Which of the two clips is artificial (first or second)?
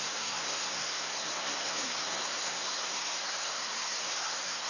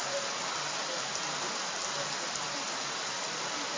first